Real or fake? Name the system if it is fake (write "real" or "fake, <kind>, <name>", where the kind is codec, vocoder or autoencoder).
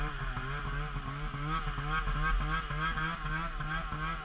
real